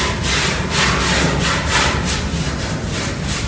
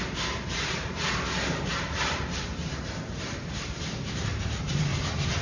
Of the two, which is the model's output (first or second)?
second